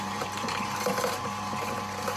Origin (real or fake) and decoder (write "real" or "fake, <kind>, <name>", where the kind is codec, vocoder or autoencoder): fake, vocoder, BigVGAN v2